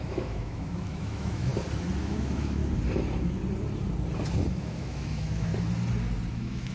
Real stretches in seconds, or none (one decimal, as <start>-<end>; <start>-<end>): 1.5-2.0; 2.6-4.5; 5.5-6.3